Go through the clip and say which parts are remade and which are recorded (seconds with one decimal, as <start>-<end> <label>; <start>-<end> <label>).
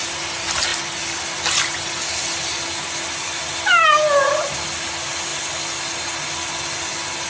0.0-7.3 recorded